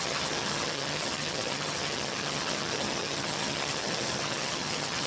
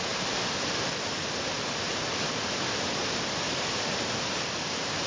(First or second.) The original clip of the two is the second